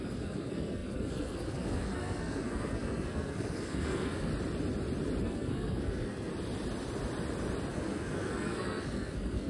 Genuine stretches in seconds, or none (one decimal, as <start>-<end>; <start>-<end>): 4.3-5.2; 6.3-7.7